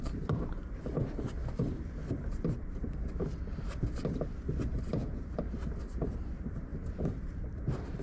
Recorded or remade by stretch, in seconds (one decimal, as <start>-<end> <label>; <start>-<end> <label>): 0.0-8.0 remade